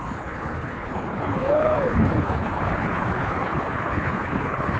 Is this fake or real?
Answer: fake